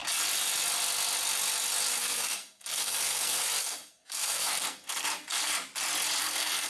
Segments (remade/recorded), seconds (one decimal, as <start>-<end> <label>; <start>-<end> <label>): 0.0-1.9 recorded; 1.9-5.5 remade; 5.5-6.2 recorded; 6.2-6.7 remade